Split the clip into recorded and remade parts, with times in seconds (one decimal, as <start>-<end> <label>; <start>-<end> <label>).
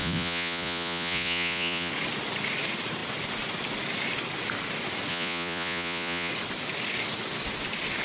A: 0.0-1.9 remade; 1.9-5.1 recorded; 5.1-6.3 remade; 6.3-8.0 recorded